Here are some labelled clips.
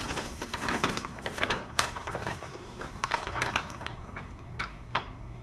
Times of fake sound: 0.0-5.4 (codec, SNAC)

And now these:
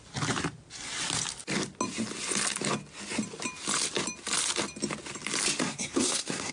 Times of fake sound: 5.6-6.5 (codec, SNAC)

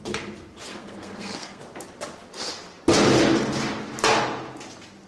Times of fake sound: 0.7-1.6 (codec, SNAC)

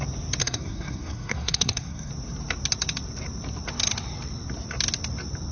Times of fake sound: 0.4-2.1 (codec, SNAC)

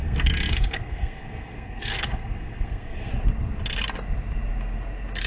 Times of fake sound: 0.0-3.1 (codec, SNAC)

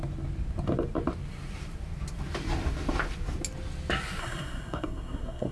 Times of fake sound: 4.2-5.5 (codec, SNAC)